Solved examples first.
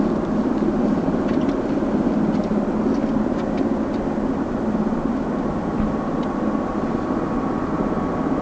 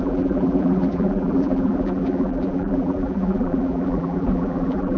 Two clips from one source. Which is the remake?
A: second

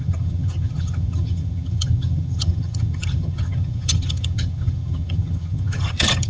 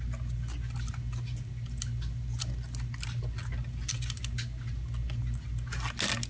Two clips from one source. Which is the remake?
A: first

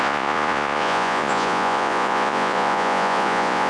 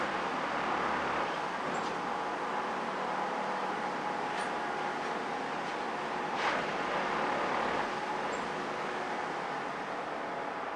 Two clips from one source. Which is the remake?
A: first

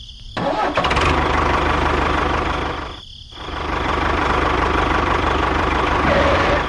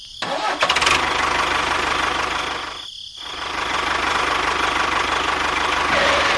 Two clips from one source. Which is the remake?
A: first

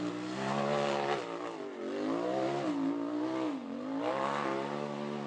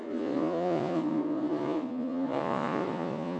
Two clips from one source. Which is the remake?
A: second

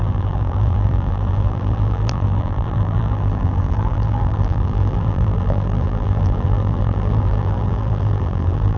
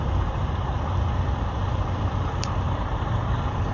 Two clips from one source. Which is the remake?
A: first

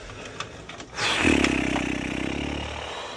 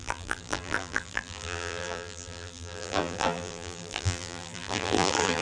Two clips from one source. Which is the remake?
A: second